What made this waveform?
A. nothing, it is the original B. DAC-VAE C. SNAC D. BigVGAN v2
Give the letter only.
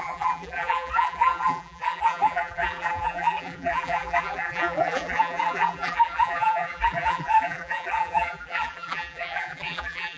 D